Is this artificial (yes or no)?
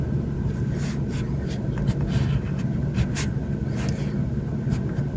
no